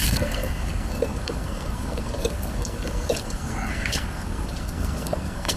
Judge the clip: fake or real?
fake